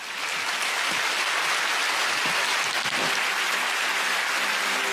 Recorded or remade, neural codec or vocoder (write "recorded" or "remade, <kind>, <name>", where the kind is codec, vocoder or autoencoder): recorded